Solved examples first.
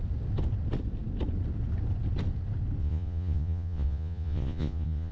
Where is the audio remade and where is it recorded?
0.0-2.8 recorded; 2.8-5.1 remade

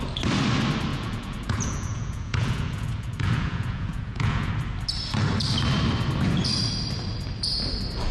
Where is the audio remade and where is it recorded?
0.0-0.9 recorded; 0.9-4.5 remade; 4.5-8.1 recorded